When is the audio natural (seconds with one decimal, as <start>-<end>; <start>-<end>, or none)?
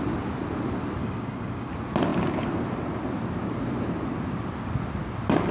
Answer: 0.0-1.0; 1.7-5.5